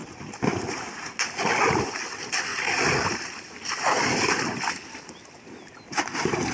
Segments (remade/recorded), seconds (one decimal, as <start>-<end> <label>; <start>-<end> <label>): 0.0-6.5 recorded